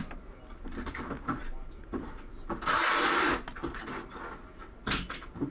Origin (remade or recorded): recorded